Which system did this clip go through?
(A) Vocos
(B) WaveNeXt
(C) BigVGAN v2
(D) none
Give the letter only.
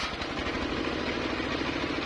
D